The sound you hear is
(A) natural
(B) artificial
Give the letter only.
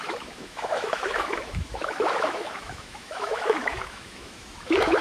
B